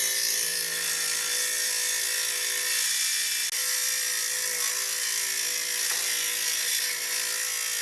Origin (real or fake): real